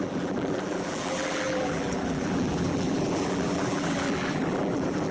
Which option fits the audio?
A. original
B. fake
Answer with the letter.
B